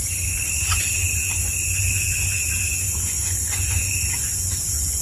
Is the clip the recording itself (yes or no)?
no